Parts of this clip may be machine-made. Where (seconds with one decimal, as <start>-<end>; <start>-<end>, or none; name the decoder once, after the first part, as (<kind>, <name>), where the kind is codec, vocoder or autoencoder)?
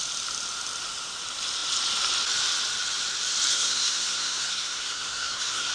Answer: 3.5-5.7 (codec, SNAC)